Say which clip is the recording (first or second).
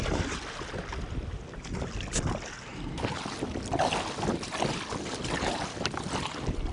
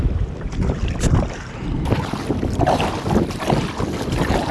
first